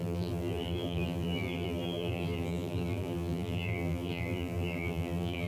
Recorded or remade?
remade